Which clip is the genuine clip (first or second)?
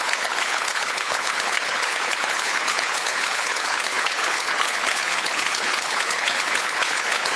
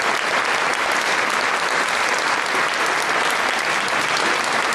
second